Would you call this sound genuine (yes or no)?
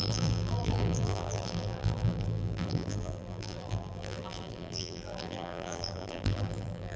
no